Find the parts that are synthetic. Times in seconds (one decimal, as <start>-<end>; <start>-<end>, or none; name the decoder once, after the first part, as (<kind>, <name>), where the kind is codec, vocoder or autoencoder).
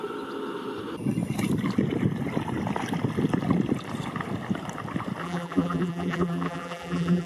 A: 5.2-7.3 (vocoder, BigVGAN v2)